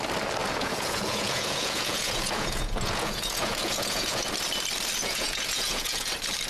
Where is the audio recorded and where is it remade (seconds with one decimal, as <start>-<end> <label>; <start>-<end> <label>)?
0.0-0.4 recorded; 0.4-4.3 remade; 4.3-5.0 recorded; 5.0-6.1 remade; 6.1-6.5 recorded